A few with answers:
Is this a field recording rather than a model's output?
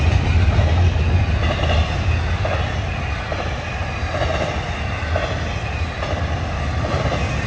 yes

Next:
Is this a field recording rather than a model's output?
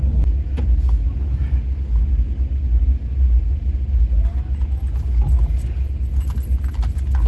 yes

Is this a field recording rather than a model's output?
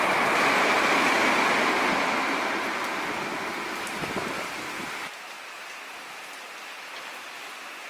yes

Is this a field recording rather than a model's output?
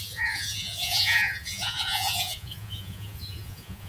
no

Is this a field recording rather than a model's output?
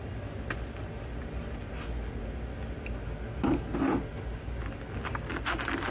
yes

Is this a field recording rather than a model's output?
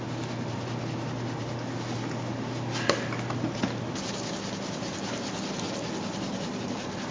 yes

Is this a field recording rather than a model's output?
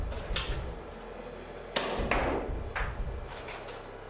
yes